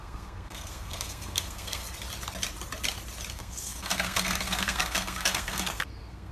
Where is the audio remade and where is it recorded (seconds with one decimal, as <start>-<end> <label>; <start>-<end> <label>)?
0.0-1.8 remade; 1.8-3.3 recorded; 3.3-6.3 remade